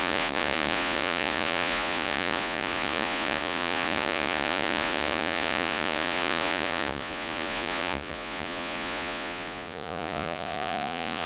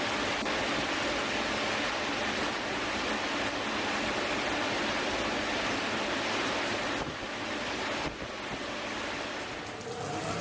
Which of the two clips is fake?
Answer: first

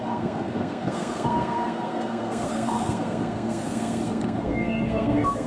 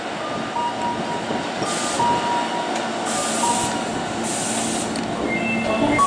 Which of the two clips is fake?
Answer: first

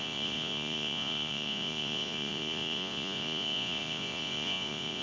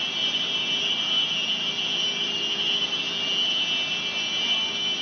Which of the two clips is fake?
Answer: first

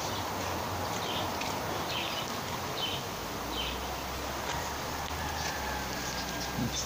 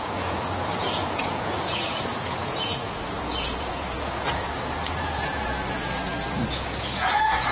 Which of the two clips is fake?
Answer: second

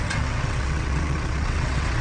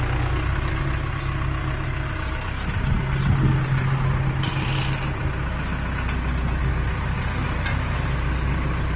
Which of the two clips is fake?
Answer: first